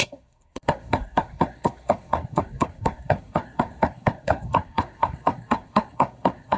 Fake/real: fake